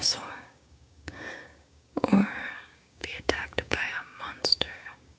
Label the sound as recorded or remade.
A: remade